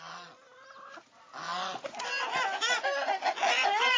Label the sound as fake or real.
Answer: real